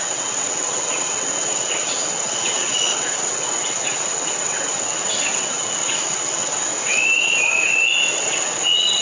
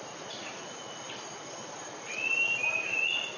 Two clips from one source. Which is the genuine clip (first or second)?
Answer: second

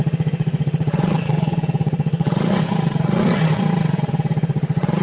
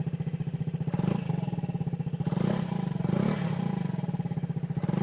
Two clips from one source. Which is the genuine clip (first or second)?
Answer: second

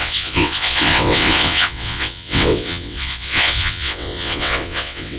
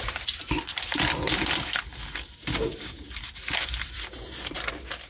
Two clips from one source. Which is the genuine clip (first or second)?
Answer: second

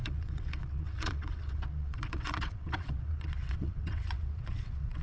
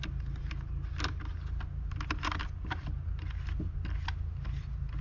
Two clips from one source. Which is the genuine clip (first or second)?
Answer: second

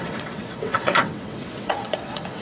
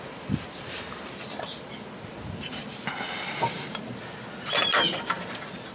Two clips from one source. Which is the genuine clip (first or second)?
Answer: second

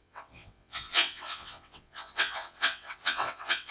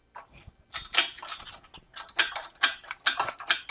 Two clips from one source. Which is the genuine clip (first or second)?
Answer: second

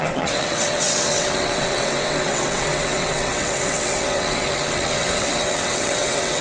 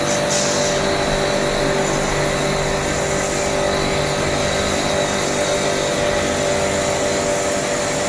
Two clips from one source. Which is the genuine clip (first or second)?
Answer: second